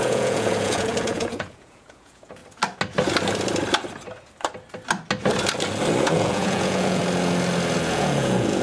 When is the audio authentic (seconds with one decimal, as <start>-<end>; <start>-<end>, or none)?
2.4-6.0; 7.0-7.9